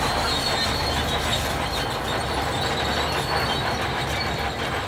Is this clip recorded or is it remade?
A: recorded